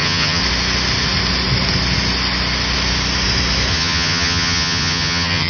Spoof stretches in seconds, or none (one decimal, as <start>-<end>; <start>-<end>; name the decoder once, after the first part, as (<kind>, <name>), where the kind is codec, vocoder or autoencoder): 0.0-0.4 (vocoder, HiFi-GAN); 3.7-5.5